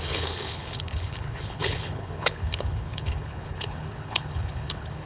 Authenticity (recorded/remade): remade